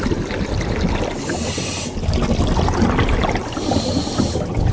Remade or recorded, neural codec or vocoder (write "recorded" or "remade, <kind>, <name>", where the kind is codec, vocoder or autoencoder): recorded